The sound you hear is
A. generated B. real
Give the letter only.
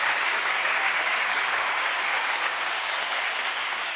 A